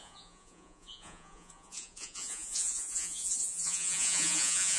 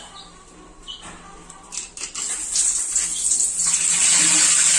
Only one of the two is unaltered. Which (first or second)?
second